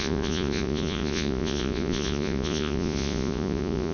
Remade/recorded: remade